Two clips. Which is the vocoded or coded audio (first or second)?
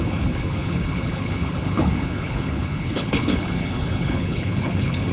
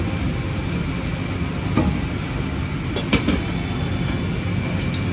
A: first